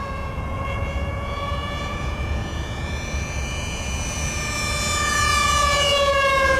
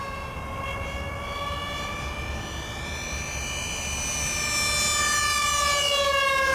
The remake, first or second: first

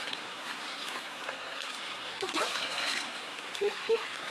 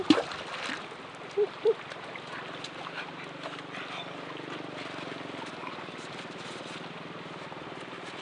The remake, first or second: first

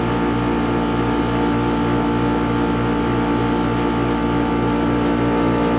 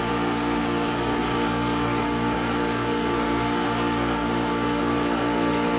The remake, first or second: second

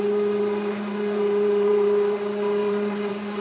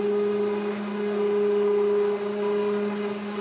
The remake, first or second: first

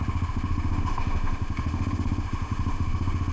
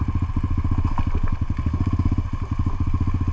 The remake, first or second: first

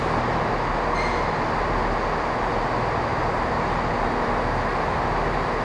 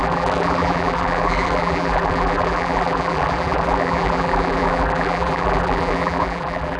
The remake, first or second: second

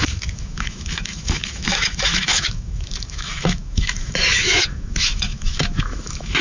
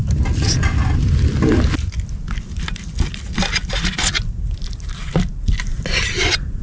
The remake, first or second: first